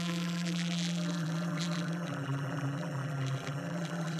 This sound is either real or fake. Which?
fake